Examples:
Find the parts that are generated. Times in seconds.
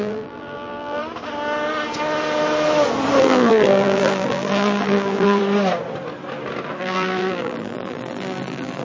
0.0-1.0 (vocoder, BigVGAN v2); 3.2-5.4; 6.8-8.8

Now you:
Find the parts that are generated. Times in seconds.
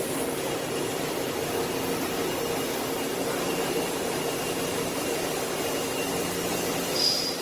3.1-4.2 (vocoder, BigVGAN v2)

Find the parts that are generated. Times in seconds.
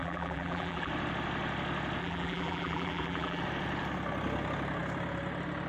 0.0-0.9 (vocoder, BigVGAN v2); 2.0-3.4